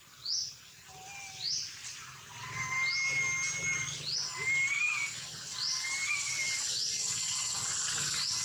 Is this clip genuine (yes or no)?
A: yes